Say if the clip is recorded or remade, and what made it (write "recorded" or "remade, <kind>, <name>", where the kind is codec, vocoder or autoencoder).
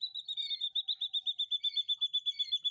recorded